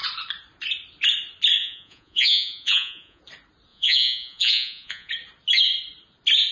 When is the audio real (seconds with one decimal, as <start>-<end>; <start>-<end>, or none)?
0.0-1.6; 3.2-3.7; 5.1-6.5